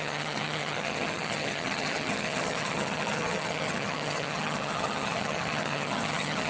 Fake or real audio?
fake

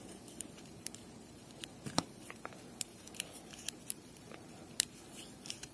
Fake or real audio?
fake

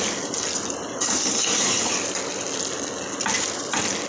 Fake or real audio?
real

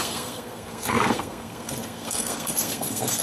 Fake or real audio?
fake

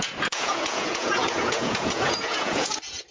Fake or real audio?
fake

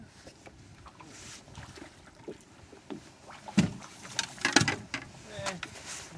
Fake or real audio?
real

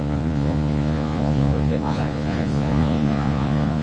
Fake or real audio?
fake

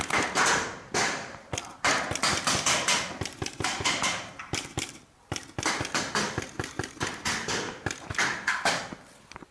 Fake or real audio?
real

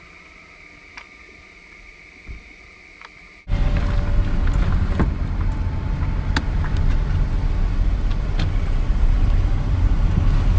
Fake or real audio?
real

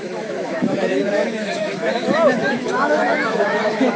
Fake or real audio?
fake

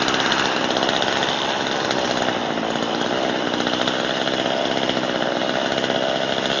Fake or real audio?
real